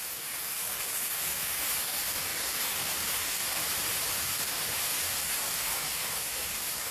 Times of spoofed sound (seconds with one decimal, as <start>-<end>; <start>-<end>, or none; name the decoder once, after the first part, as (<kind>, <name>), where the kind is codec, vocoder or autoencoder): 0.0-3.6 (codec, DAC); 4.2-6.9